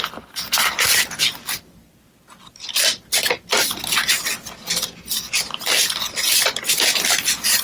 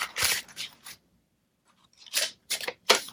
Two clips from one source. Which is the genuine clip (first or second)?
first